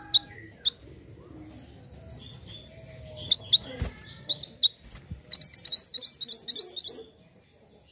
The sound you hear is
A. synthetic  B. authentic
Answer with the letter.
B